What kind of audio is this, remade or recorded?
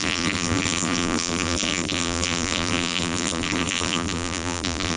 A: remade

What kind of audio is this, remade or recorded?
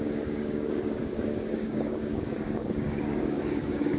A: remade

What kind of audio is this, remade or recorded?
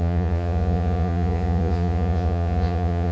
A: remade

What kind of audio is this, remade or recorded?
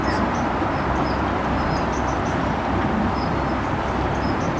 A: recorded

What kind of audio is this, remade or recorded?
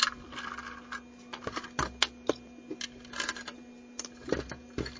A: recorded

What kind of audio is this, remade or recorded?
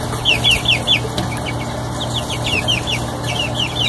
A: recorded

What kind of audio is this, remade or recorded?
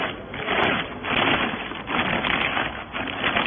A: recorded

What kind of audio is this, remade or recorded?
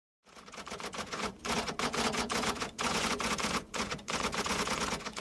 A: remade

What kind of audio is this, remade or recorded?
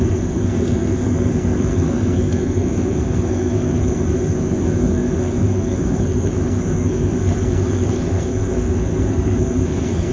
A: remade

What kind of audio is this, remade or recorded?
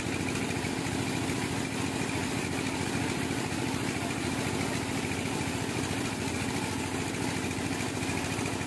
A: recorded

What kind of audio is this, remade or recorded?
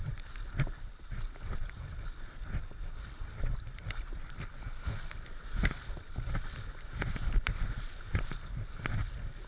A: recorded